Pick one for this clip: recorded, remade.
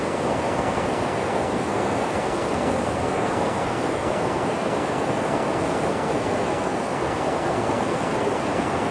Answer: remade